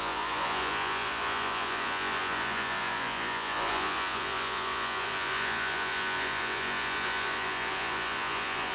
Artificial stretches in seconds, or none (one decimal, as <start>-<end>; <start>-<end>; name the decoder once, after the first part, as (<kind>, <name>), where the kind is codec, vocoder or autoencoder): 0.0-8.7 (vocoder, Vocos)